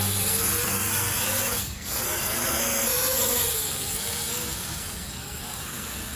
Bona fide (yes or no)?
no